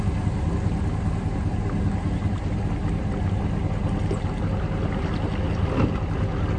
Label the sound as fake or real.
real